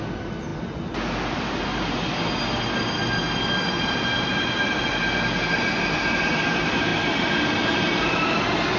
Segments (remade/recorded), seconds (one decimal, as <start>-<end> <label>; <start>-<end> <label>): 0.0-6.9 recorded; 6.9-8.4 remade; 8.4-8.8 recorded